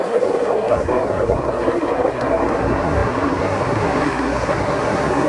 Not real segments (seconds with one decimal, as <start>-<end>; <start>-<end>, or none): 0.0-5.3